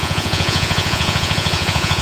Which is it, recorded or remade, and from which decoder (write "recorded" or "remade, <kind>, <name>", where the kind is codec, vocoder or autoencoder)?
remade, vocoder, Vocos